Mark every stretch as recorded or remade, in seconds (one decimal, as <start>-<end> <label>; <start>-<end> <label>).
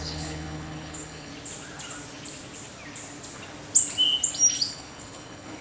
0.0-1.3 remade; 1.3-4.7 recorded; 4.7-5.6 remade